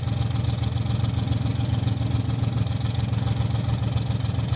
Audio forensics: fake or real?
real